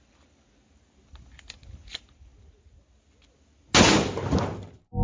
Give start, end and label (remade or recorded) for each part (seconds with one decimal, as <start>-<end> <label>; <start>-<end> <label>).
0.0-5.0 recorded